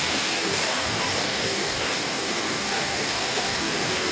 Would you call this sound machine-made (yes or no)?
yes